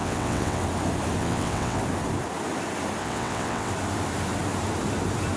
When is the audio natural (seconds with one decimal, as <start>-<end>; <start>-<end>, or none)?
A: 0.6-1.2; 1.8-3.0; 3.7-5.4